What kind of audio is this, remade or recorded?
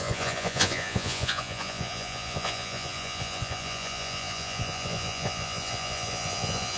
remade